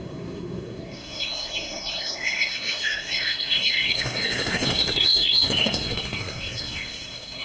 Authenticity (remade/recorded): remade